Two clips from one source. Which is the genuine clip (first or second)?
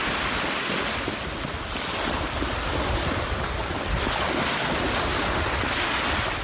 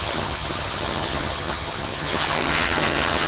first